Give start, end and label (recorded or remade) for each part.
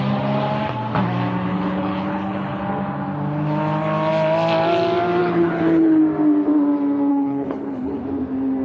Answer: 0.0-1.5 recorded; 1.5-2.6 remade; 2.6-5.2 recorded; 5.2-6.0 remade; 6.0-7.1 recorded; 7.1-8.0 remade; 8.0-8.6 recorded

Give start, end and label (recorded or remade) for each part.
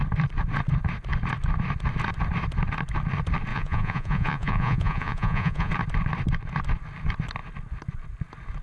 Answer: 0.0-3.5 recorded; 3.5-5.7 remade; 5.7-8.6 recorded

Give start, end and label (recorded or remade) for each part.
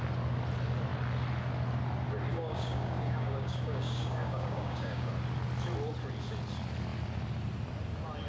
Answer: 0.0-2.3 recorded; 2.3-5.1 remade; 5.1-8.3 recorded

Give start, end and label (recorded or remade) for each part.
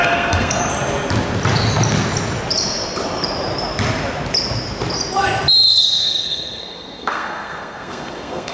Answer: 0.0-0.6 remade; 0.6-5.7 recorded; 5.7-8.5 remade